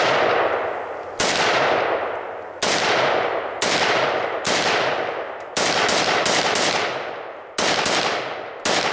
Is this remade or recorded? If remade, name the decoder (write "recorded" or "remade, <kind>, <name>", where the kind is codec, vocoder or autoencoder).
recorded